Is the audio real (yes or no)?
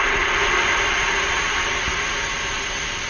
yes